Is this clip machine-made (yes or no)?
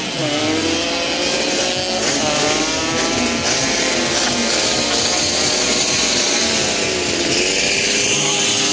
no